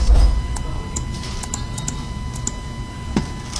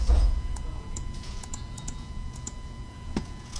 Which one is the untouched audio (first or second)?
first